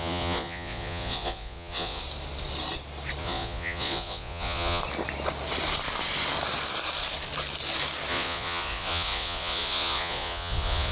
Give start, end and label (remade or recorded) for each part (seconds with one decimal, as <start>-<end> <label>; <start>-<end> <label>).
0.0-2.0 remade; 2.0-3.2 recorded; 3.2-4.8 remade; 4.8-8.1 recorded; 8.1-10.9 remade